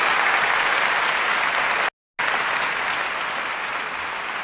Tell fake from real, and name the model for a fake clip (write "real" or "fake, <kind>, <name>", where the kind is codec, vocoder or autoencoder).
real